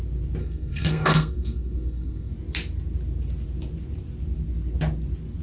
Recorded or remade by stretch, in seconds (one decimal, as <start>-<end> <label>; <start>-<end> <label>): 0.0-0.4 recorded; 0.4-2.3 remade; 2.3-5.4 recorded